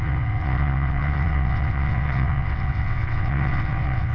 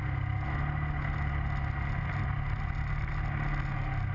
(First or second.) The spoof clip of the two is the first